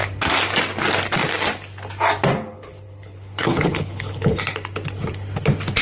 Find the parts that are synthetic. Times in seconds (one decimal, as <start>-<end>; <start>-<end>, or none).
2.5-4.4